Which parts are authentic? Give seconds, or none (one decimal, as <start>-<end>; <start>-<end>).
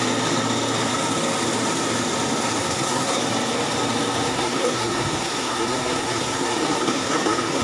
0.0-2.6; 3.2-4.3